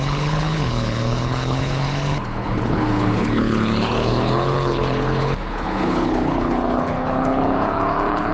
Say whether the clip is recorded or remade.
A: remade